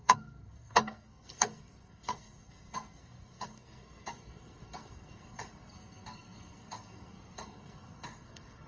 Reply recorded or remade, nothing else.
remade